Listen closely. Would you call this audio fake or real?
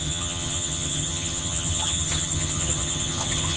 fake